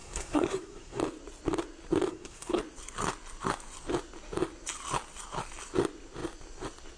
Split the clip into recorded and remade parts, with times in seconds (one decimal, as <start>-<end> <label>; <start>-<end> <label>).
0.0-1.0 remade; 1.0-2.1 recorded; 2.1-2.6 remade; 2.6-7.0 recorded